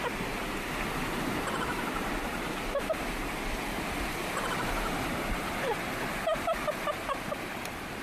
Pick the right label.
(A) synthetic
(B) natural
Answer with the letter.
B